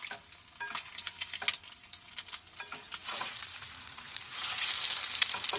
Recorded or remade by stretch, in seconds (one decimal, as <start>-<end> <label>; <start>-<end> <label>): 0.0-3.0 recorded; 3.0-4.7 remade; 4.7-5.6 recorded